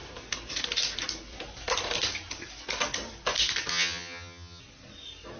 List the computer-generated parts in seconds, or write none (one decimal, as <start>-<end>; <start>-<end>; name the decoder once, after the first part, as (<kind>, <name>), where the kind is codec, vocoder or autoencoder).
3.7-4.6 (vocoder, HiFi-GAN)